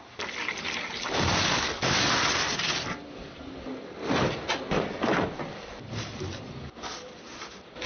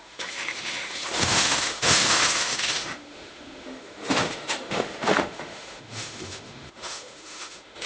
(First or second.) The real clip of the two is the first